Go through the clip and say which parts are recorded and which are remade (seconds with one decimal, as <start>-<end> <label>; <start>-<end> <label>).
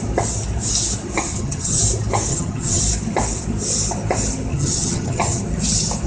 0.0-1.3 recorded; 1.3-1.8 remade; 1.8-2.3 recorded; 2.3-2.8 remade; 2.8-4.5 recorded; 4.5-5.4 remade; 5.4-6.1 recorded